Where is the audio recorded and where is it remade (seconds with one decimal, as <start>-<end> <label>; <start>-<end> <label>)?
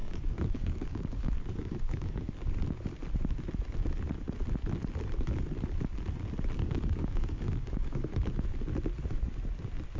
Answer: 0.0-2.3 remade; 2.3-6.6 recorded; 6.6-8.0 remade; 8.0-10.0 recorded